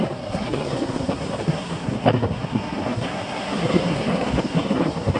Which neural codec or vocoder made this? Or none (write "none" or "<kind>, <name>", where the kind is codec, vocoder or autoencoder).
codec, SNAC